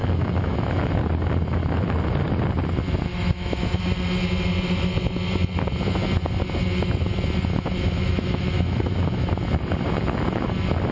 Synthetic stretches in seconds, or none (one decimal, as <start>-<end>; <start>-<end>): 0.0-0.7; 3.1-3.8; 7.5-9.3